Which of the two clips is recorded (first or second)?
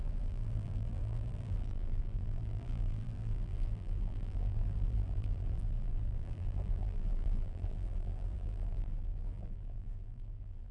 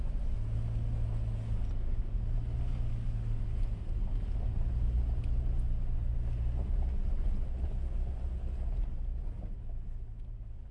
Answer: second